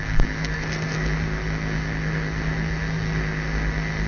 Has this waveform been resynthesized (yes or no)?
yes